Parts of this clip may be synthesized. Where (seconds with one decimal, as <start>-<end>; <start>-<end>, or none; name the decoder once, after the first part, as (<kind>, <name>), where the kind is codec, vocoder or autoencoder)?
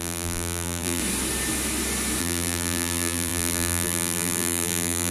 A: 0.0-1.0 (vocoder, BigVGAN v2); 2.2-5.1